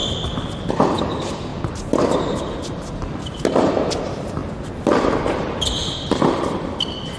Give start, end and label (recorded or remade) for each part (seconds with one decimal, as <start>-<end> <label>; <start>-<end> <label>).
0.0-7.2 recorded